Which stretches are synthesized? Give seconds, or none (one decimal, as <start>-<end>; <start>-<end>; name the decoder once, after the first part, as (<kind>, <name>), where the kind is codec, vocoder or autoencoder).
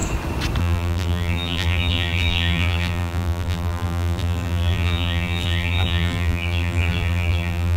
0.6-7.8 (vocoder, BigVGAN v2)